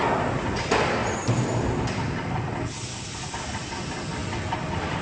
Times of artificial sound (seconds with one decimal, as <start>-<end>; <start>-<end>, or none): 1.0-1.9